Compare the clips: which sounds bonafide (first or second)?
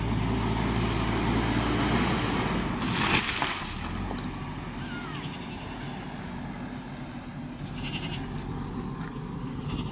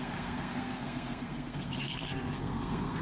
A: first